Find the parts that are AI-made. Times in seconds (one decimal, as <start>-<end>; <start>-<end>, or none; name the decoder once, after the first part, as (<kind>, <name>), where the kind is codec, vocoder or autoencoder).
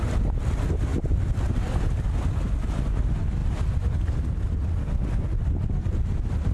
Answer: none